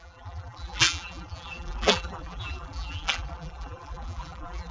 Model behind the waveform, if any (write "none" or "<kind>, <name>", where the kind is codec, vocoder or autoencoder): vocoder, BigVGAN v2